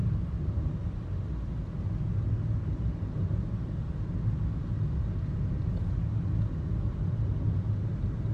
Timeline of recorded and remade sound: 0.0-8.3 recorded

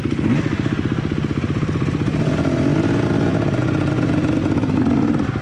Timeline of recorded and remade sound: 0.0-5.4 recorded

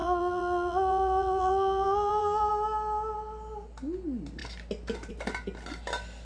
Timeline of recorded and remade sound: 0.0-2.5 remade; 2.5-6.2 recorded

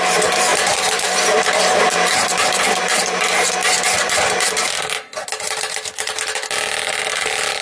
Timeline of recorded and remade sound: 0.0-0.5 recorded; 0.5-2.6 remade; 2.6-7.6 recorded

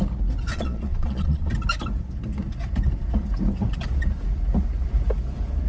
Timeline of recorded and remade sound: 0.0-0.5 recorded; 0.5-1.5 remade; 1.5-5.7 recorded

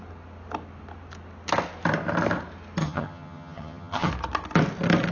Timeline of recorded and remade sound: 0.0-2.8 recorded; 2.8-4.1 remade; 4.1-5.1 recorded